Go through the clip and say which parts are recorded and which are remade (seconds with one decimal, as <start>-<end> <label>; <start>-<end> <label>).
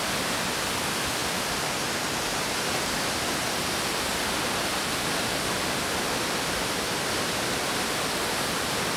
0.0-9.0 recorded